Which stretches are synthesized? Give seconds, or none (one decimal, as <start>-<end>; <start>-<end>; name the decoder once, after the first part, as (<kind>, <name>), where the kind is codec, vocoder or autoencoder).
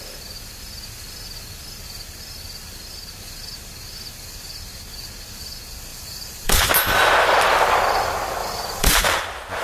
5.9-6.7 (vocoder, BigVGAN v2); 8.4-9.2